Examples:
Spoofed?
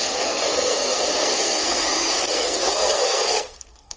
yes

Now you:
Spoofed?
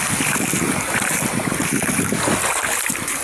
no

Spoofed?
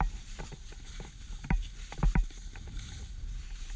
no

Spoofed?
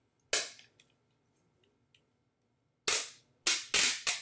no